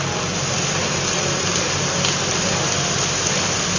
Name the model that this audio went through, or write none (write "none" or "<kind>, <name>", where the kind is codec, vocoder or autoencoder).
none